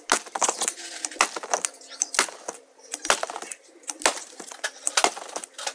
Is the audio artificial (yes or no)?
no